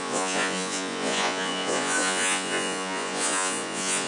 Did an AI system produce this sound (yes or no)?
yes